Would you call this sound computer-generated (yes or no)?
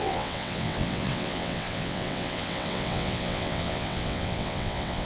yes